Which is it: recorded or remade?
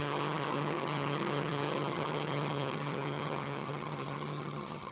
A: remade